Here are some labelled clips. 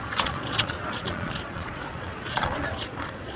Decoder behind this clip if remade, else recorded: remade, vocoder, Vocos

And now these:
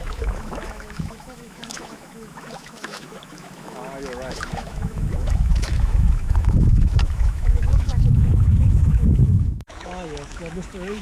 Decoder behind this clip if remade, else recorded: remade, autoencoder, DAC-VAE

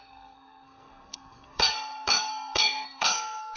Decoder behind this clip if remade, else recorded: remade, codec, SNAC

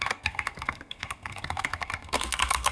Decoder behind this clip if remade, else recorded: remade, codec, SNAC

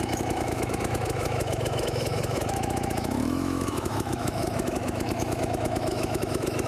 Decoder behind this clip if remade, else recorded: remade, autoencoder, DAC-VAE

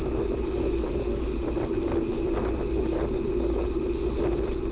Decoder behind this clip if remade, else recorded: recorded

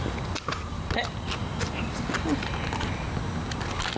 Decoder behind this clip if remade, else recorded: recorded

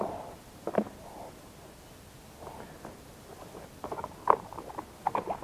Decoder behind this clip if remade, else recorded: recorded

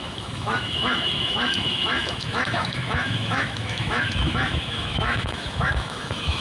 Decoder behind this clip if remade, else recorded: remade, autoencoder, DAC-VAE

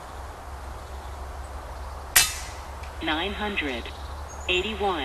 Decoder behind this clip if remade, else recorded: recorded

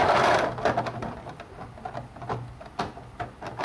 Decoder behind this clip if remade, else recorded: recorded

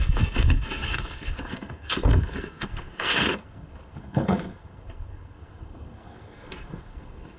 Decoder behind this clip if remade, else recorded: remade, codec, SNAC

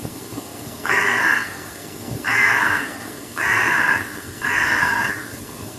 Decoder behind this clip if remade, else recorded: remade, codec, SNAC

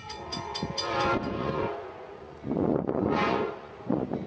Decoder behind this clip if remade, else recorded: remade, vocoder, Vocos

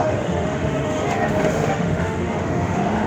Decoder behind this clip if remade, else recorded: remade, autoencoder, DAC-VAE